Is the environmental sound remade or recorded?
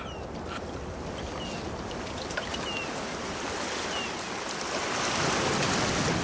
recorded